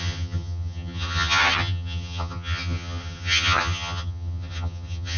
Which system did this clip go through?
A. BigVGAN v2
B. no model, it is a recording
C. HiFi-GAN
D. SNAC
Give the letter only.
C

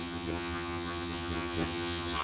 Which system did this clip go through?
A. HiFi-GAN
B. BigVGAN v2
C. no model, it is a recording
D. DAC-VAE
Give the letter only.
A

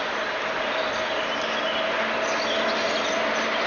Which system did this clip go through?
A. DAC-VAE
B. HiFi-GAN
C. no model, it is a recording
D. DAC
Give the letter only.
C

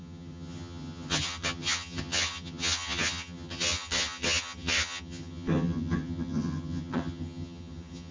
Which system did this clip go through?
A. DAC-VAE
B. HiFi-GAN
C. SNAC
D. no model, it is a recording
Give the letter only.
B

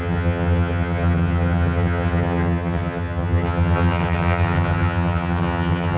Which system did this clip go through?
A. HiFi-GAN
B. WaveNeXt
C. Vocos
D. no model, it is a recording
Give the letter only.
A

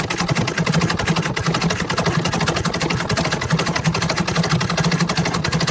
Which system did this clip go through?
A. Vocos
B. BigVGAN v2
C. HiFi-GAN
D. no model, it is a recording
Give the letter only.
D